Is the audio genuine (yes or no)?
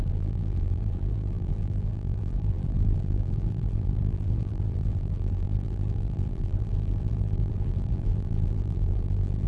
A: no